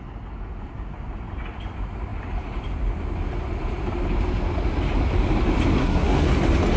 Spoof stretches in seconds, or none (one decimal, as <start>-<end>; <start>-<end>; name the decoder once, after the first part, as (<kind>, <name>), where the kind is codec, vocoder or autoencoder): 5.8-6.3 (codec, SNAC)